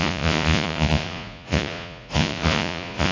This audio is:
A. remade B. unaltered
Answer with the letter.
A